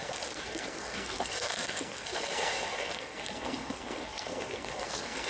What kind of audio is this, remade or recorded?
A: remade